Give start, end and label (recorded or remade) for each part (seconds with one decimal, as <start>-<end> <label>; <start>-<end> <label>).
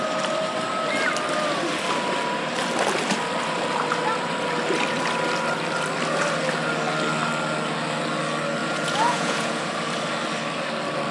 0.0-8.6 recorded; 8.6-9.7 remade; 9.7-11.1 recorded